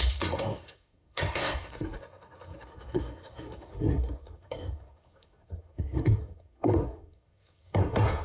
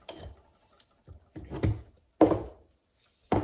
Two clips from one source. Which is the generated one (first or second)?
first